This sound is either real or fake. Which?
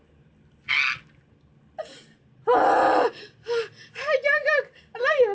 real